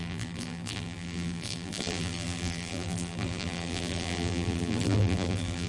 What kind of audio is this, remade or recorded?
remade